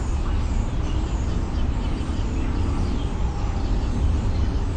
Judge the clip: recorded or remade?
recorded